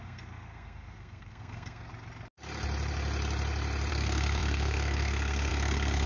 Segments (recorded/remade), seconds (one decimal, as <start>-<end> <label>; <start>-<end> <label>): 0.0-1.9 remade; 1.9-3.9 recorded; 3.9-6.1 remade